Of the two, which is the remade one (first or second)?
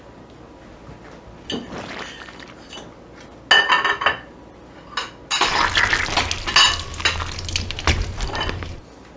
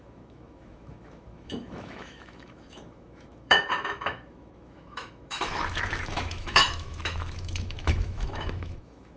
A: second